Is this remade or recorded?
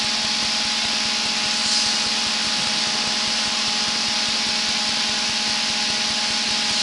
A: recorded